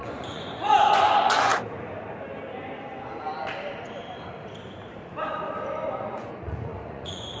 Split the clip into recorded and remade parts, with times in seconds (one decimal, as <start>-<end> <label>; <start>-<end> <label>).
0.0-1.5 remade; 1.5-5.9 recorded; 5.9-7.4 remade